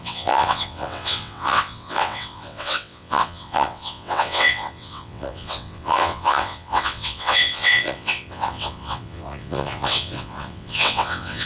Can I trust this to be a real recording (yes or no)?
no